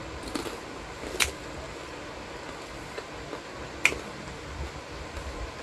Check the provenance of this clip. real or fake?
real